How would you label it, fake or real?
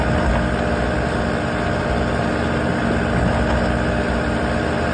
real